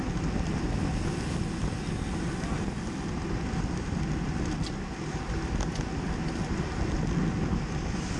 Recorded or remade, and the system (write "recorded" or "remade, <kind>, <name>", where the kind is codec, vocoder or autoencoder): recorded